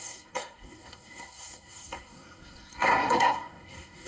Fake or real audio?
fake